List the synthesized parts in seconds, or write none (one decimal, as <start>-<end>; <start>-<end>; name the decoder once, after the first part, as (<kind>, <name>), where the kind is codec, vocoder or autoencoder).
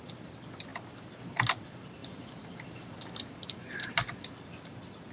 2.0-4.0 (vocoder, BigVGAN v2)